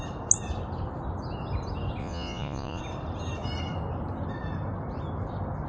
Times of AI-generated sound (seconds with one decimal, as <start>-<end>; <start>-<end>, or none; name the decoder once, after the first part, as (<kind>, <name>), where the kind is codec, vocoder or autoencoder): 2.0-2.8 (vocoder, Vocos)